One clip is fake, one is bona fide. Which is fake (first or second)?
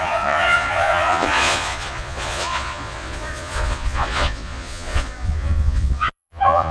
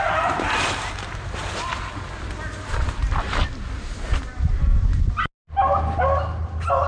first